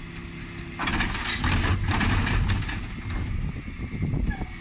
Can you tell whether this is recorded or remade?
recorded